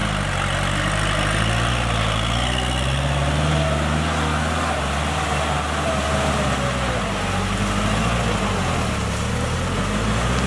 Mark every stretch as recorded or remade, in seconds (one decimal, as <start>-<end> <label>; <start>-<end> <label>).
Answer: 0.0-10.5 recorded